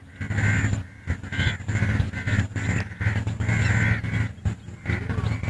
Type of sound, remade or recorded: recorded